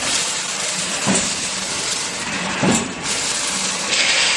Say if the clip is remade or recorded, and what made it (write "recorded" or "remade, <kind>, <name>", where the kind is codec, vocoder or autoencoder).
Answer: remade, vocoder, BigVGAN v2